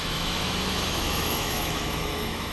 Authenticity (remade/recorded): remade